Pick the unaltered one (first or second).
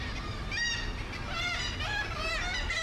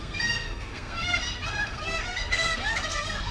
first